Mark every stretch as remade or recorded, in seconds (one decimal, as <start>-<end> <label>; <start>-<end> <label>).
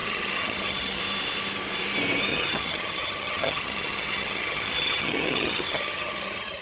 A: 0.0-1.0 remade; 1.0-2.3 recorded; 2.3-6.6 remade